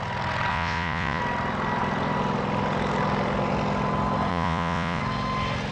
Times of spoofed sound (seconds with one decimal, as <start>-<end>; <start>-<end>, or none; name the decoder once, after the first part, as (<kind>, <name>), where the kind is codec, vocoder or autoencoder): 0.5-1.2 (vocoder, Vocos); 4.3-5.0